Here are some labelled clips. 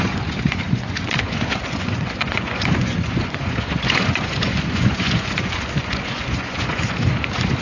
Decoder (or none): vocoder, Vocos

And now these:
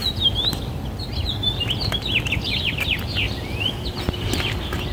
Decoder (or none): none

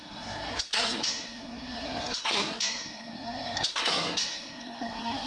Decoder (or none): codec, SNAC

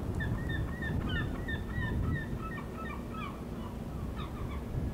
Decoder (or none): none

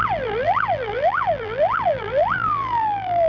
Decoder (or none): vocoder, BigVGAN v2